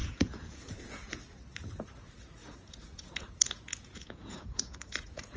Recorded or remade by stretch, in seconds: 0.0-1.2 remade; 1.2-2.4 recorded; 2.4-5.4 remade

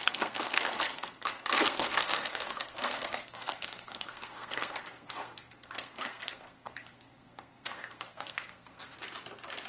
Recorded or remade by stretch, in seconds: 0.0-8.9 remade; 8.9-9.7 recorded

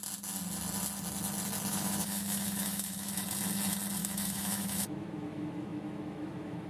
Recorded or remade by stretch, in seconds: 0.0-1.7 recorded; 1.7-3.2 remade; 3.2-4.0 recorded; 4.0-6.7 remade

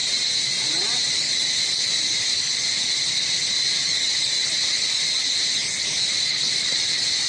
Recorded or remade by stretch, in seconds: 0.0-7.3 recorded